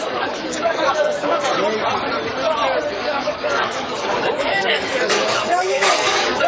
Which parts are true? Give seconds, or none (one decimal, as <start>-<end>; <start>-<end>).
1.5-2.9